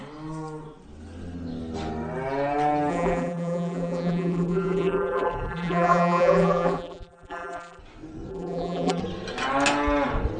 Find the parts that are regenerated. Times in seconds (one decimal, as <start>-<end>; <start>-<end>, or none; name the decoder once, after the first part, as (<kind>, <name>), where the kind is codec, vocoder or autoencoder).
2.9-7.8 (vocoder, BigVGAN v2); 8.3-9.0